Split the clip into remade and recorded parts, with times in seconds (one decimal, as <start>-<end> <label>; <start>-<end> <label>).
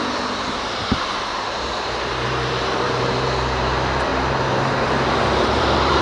0.0-6.0 remade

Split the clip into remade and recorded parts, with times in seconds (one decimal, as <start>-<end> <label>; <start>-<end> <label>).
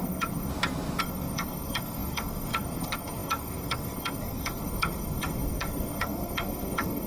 0.0-0.5 remade; 0.5-1.0 recorded; 1.0-7.1 remade